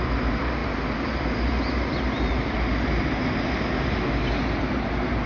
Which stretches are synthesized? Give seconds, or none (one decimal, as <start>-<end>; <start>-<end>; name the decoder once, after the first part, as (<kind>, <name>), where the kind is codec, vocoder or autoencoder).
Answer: none